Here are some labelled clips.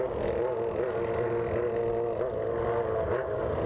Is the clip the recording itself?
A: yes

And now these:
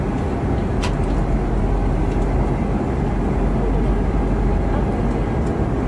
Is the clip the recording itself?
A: yes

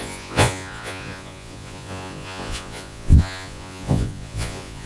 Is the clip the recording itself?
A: no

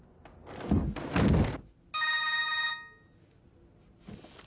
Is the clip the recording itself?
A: yes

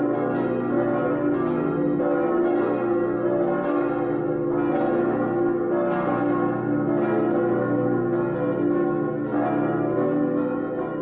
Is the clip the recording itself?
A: yes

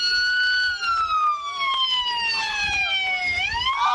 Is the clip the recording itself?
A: yes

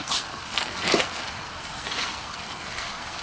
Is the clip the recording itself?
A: no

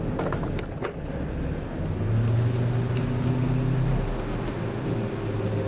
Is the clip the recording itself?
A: yes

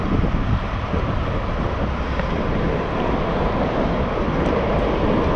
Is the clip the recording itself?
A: yes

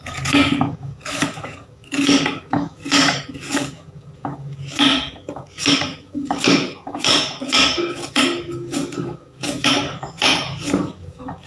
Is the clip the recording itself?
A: no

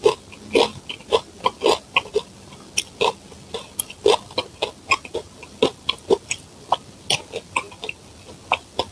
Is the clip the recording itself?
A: yes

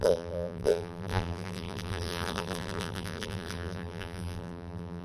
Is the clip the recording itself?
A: no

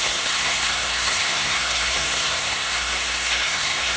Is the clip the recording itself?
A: no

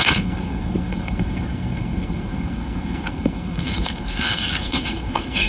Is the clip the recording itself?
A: no